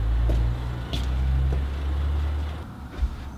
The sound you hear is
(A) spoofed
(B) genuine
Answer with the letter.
B